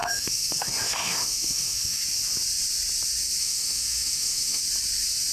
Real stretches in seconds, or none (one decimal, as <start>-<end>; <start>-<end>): 2.0-3.4; 4.6-5.3